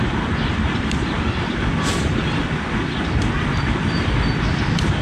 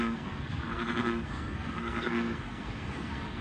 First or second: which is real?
first